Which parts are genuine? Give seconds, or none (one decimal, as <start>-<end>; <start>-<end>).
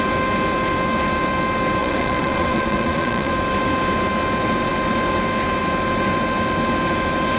0.0-1.8; 3.3-7.4